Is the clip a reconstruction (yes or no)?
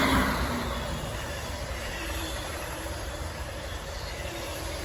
yes